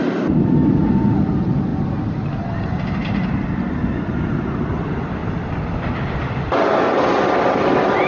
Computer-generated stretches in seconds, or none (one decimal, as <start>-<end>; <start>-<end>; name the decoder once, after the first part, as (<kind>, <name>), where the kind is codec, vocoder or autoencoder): none